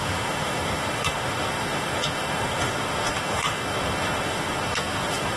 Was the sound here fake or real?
fake